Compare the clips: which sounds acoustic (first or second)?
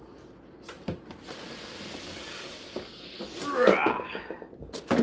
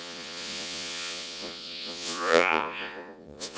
first